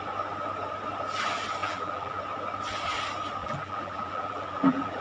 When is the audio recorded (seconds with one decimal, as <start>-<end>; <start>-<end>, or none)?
0.0-1.6; 2.2-3.4